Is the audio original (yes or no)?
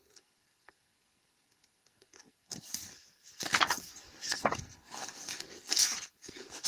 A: no